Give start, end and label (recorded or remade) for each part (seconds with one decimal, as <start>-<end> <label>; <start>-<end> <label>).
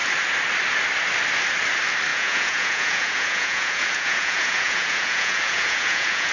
0.0-2.1 recorded; 2.1-6.3 remade